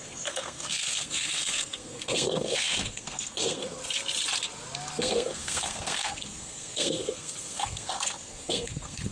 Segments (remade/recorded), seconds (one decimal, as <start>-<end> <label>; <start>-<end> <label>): 0.0-3.8 remade; 3.8-4.9 recorded; 4.9-9.1 remade

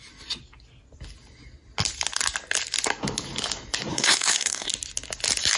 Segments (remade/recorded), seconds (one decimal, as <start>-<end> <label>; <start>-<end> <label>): 0.0-3.9 recorded; 3.9-4.7 remade; 4.7-5.6 recorded